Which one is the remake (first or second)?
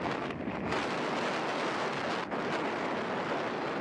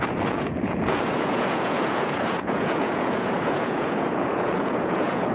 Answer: second